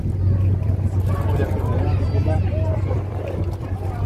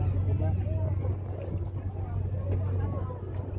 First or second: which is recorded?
second